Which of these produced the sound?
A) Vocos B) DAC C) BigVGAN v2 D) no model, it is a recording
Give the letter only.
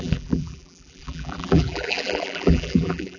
C